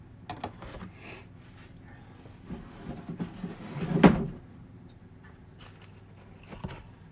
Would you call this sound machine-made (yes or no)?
no